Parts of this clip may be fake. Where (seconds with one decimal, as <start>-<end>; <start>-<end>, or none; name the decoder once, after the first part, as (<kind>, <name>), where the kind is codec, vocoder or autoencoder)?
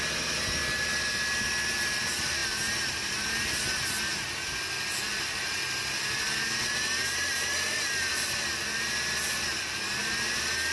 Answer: none